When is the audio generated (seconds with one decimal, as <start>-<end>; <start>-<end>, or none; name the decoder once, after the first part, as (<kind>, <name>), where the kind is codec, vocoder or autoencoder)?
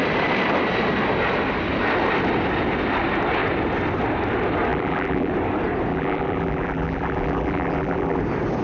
4.7-5.3 (vocoder, BigVGAN v2); 5.9-8.2